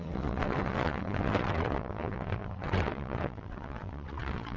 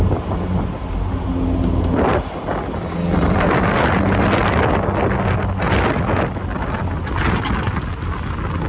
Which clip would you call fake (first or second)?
first